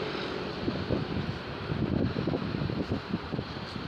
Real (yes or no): no